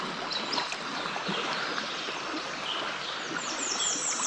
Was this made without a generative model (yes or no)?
yes